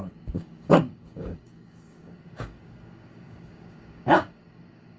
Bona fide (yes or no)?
no